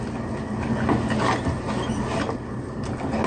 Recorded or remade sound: recorded